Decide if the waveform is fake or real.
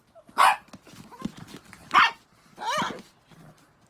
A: real